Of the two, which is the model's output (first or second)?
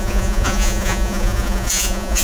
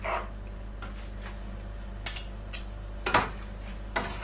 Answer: first